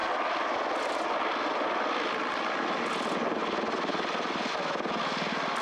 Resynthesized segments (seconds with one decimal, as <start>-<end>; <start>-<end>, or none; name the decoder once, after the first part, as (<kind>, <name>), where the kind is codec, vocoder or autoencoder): none